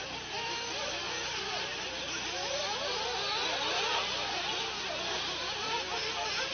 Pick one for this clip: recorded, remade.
recorded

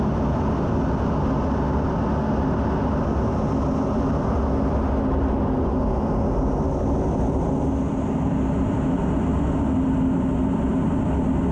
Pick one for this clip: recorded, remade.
recorded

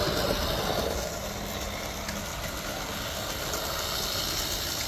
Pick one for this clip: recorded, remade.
recorded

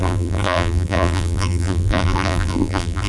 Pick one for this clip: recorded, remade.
remade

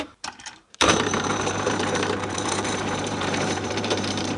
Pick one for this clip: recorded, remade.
remade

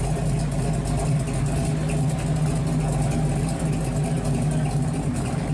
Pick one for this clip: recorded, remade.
recorded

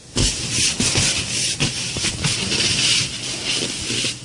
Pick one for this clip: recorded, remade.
recorded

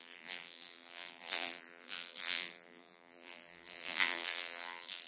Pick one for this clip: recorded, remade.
remade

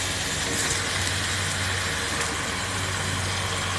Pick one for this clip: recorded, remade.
recorded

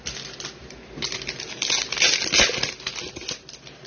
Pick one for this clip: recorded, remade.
recorded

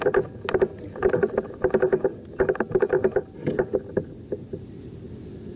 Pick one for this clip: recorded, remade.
recorded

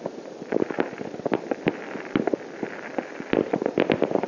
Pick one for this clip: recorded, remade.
remade